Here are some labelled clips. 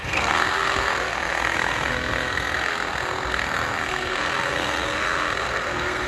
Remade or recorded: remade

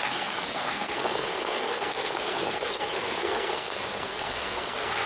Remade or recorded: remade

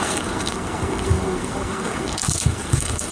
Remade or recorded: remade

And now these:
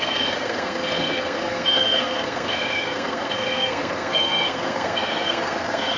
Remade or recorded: remade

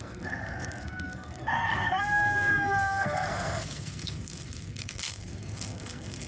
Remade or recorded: remade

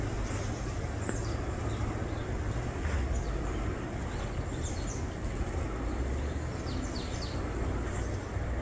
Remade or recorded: recorded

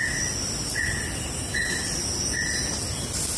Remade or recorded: recorded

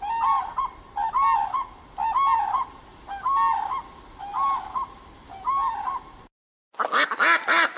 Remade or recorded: recorded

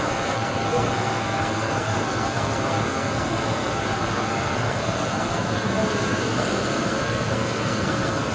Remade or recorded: remade